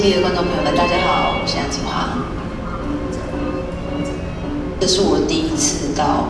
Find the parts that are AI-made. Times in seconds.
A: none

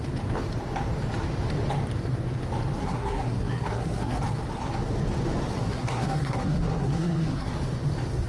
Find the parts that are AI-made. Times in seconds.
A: 2.8-4.2 (codec, SNAC); 5.6-7.5

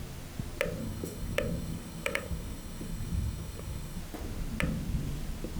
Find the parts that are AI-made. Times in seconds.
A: 0.8-4.0 (codec, DAC)

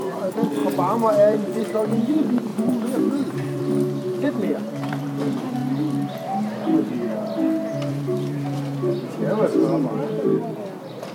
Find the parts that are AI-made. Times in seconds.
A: 0.0-5.6 (vocoder, BigVGAN v2); 7.9-10.3

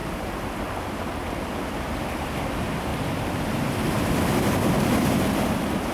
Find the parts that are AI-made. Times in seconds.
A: 0.0-2.9 (vocoder, BigVGAN v2); 5.1-5.9

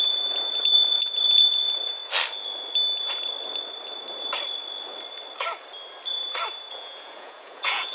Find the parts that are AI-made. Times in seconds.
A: 0.0-2.0 (vocoder, Vocos); 6.7-7.9

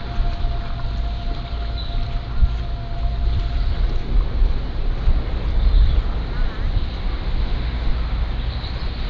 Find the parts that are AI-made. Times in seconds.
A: 7.4-7.9 (autoencoder, DAC-VAE)

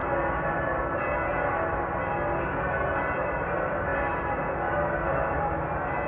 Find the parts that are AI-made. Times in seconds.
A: none